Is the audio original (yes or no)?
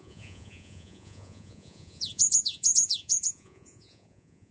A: no